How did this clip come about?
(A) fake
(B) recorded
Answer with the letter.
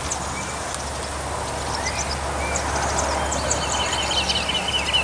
B